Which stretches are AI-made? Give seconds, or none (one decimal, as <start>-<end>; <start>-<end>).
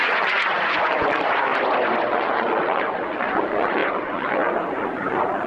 0.0-1.5; 2.1-5.5